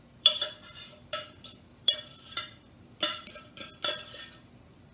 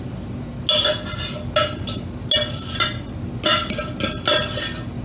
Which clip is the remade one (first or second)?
first